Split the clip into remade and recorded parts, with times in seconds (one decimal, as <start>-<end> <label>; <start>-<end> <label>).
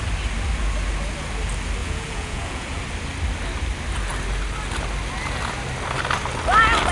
0.0-1.8 recorded; 1.8-2.8 remade; 2.8-6.9 recorded